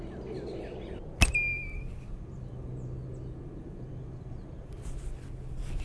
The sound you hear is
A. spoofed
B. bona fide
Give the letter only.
B